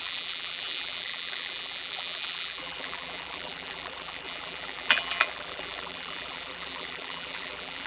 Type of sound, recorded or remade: remade